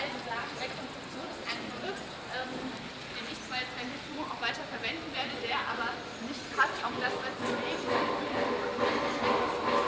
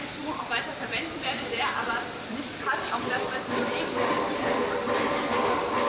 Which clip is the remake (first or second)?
second